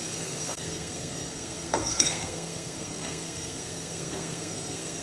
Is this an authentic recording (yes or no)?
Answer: no